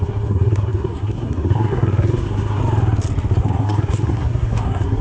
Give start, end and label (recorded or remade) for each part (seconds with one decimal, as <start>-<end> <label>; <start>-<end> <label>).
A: 0.0-2.6 remade; 2.6-3.4 recorded; 3.4-5.0 remade